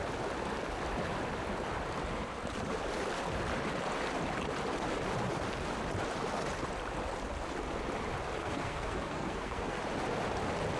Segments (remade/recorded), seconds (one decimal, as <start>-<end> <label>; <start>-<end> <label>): 0.0-8.4 recorded; 8.4-9.8 remade; 9.8-10.8 recorded